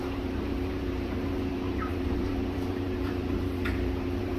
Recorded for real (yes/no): no